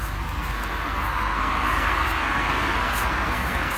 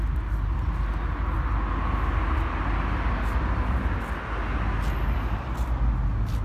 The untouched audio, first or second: second